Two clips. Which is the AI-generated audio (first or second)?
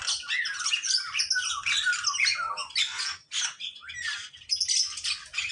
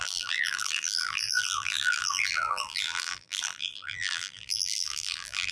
second